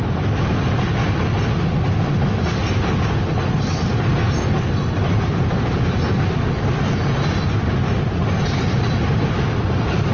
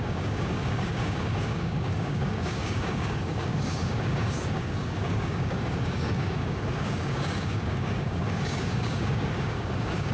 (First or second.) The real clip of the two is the first